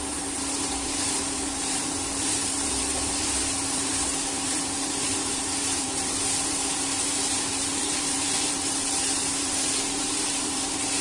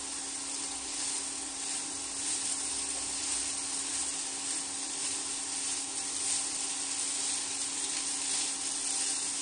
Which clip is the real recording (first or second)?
second